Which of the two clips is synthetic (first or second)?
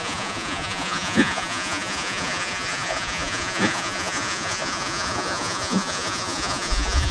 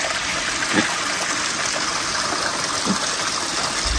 first